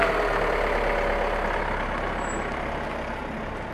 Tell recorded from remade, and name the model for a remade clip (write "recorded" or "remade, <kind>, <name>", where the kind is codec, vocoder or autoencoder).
recorded